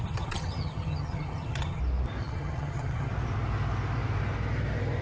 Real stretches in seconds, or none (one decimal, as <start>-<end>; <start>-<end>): 1.8-2.2; 3.1-5.0